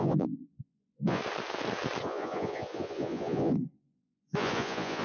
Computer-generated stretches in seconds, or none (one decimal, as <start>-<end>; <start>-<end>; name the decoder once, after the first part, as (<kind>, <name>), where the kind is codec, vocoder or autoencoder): 0.0-1.2 (vocoder, Vocos); 2.0-5.0